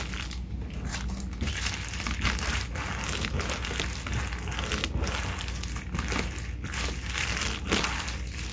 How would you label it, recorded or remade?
recorded